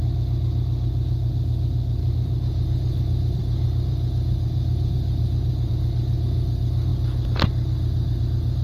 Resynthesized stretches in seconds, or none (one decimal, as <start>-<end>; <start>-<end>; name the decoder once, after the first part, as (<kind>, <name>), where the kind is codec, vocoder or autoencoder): 2.0-5.7 (vocoder, BigVGAN v2)